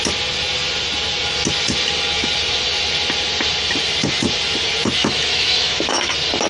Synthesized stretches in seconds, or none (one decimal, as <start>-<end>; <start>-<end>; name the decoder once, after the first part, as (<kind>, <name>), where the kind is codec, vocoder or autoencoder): 5.0-6.1 (autoencoder, DAC-VAE)